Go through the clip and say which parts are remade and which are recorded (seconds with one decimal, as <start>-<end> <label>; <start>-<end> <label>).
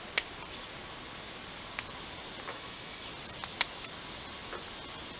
0.0-2.5 recorded; 2.5-3.1 remade; 3.1-5.2 recorded